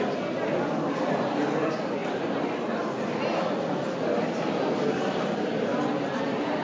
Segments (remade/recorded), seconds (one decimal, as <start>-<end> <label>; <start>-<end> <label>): 0.0-6.6 recorded